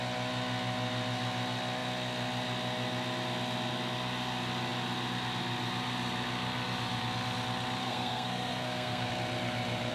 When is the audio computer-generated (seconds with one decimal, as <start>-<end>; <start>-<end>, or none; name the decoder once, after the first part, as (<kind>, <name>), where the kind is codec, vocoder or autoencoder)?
7.8-9.1 (codec, SNAC)